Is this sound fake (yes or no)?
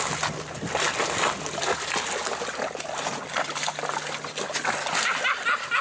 no